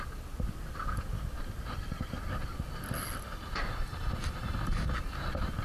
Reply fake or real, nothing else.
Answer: real